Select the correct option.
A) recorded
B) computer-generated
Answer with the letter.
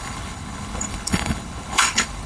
B